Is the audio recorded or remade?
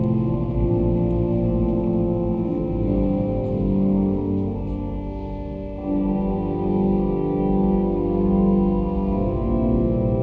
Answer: recorded